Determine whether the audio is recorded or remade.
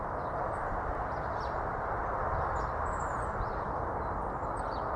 recorded